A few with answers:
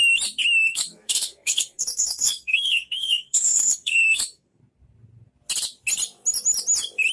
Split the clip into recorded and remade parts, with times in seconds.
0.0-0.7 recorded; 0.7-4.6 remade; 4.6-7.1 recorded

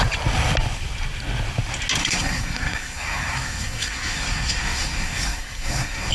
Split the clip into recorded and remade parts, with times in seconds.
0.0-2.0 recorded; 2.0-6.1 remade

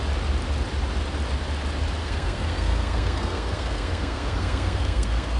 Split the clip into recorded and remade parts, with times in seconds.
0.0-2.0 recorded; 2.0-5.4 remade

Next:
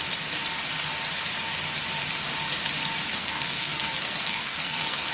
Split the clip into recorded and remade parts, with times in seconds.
0.0-3.1 recorded; 3.1-5.1 remade

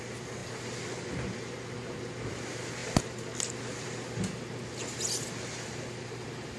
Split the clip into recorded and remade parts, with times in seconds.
0.0-6.6 recorded

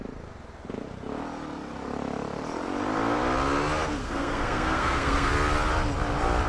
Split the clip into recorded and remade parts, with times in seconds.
0.0-4.0 recorded; 4.0-5.3 remade; 5.3-6.5 recorded